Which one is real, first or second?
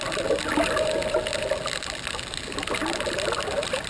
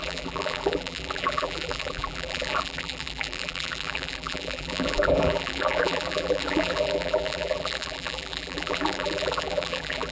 first